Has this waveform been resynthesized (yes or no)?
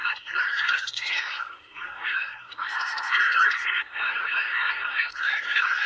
yes